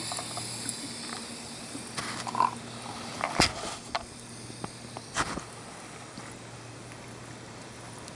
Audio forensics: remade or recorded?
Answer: recorded